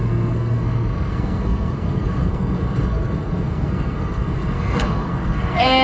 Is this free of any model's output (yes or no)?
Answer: no